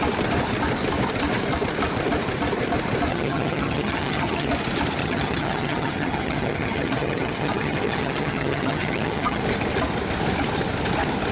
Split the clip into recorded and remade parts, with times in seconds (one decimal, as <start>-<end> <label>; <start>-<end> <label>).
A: 0.0-3.1 recorded; 3.1-4.5 remade; 4.5-5.0 recorded; 5.0-9.4 remade; 9.4-11.3 recorded